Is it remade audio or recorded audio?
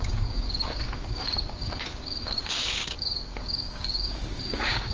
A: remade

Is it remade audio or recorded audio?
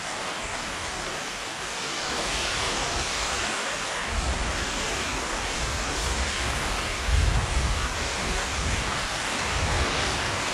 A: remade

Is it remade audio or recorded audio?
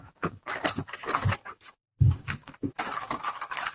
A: remade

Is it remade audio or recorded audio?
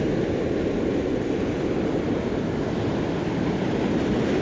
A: recorded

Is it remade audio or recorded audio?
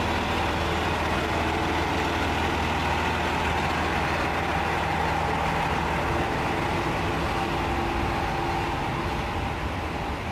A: recorded